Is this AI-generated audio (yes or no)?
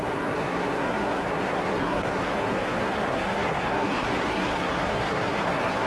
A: yes